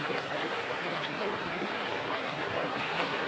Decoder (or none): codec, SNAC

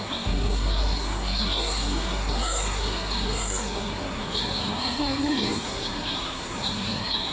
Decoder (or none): codec, SNAC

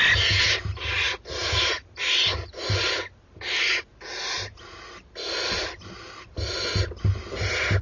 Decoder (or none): none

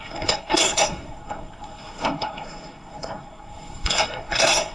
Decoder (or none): codec, SNAC